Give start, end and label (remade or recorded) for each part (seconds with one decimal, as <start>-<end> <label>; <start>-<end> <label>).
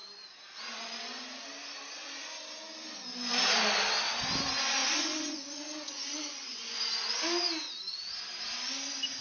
0.0-4.8 recorded; 4.8-6.8 remade; 6.8-9.2 recorded